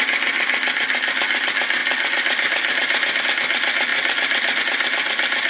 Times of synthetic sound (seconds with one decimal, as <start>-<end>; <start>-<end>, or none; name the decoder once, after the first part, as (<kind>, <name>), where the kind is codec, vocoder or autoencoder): 1.8-3.2 (vocoder, BigVGAN v2); 3.9-4.6